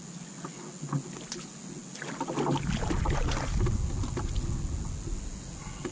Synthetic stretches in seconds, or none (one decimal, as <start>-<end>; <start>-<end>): none